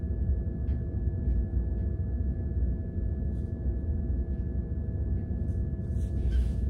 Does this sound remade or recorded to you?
recorded